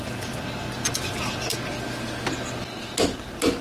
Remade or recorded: recorded